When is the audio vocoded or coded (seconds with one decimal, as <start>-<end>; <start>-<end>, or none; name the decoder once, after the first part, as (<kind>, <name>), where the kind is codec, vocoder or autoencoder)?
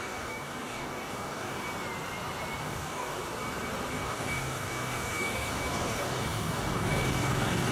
0.0-1.6 (codec, DAC); 2.6-3.2; 3.9-7.7